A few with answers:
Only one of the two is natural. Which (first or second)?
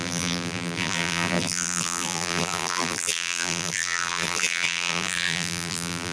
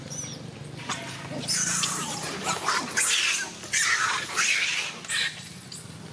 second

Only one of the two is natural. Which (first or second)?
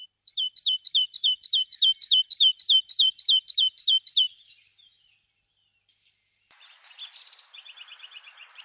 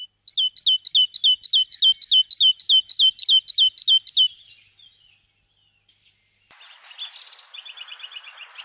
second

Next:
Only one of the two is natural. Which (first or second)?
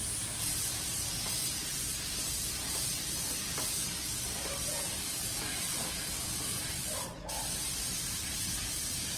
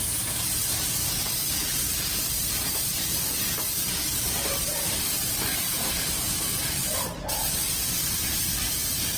first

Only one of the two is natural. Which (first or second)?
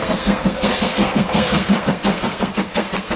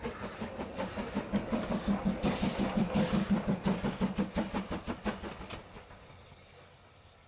second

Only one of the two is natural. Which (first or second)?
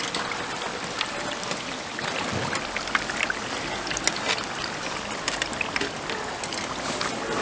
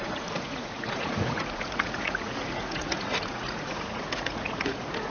first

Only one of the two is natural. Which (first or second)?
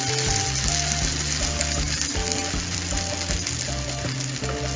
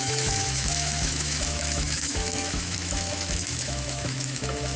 first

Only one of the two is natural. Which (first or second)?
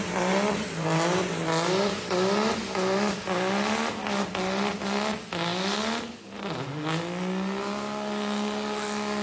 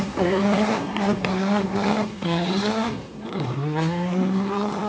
first